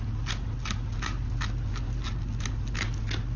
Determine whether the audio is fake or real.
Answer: real